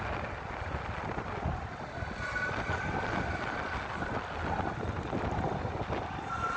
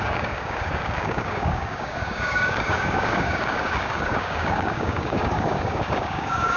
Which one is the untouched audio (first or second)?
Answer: first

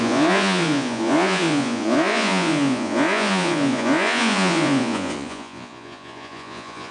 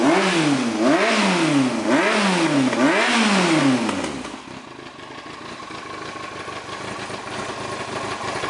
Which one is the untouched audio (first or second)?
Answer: second